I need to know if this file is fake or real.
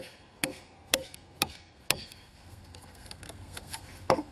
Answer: fake